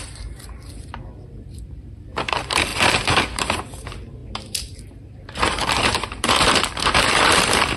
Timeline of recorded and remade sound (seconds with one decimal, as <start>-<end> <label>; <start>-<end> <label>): 0.0-7.8 remade